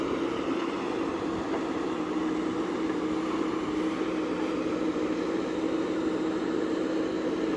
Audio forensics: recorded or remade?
recorded